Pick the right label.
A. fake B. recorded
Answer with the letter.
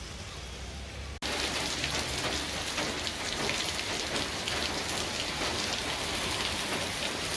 B